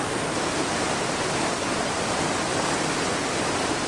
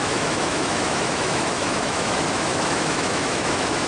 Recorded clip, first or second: first